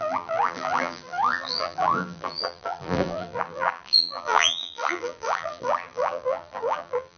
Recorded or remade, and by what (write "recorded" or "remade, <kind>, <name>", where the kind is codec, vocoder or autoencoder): remade, vocoder, BigVGAN v2